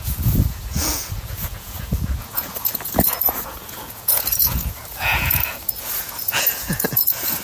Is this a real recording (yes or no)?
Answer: no